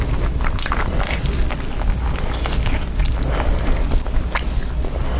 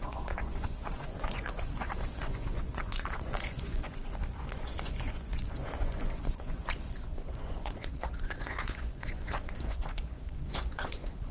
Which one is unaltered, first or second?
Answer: first